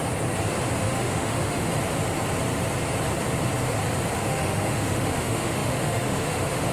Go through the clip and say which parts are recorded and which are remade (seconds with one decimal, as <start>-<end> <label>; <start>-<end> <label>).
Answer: 0.0-0.8 recorded; 0.8-1.7 remade; 1.7-4.2 recorded; 4.2-6.7 remade